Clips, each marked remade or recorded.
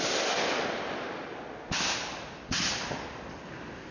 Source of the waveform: recorded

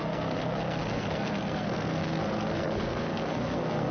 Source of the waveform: remade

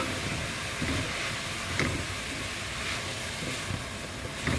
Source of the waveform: recorded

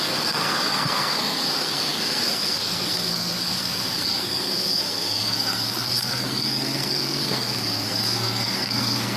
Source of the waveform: remade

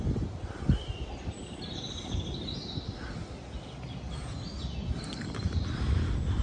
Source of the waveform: recorded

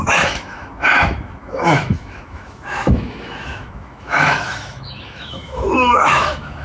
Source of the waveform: remade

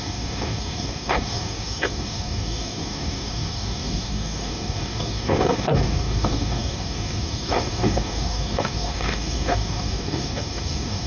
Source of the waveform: remade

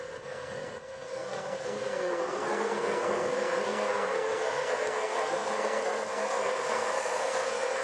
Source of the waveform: remade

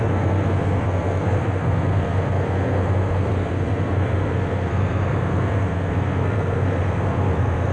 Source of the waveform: remade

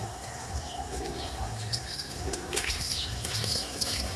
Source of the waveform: remade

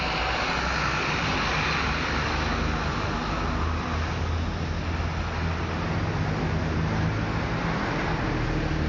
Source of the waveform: recorded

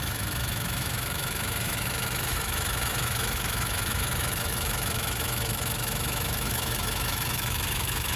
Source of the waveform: remade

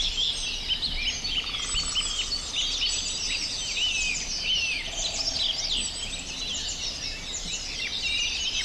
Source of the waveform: recorded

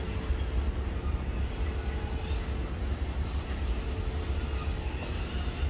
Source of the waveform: recorded